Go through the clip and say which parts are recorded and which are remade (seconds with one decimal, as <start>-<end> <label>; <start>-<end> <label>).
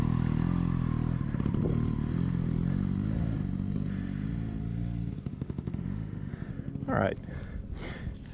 0.0-5.3 recorded; 5.3-6.5 remade; 6.5-8.3 recorded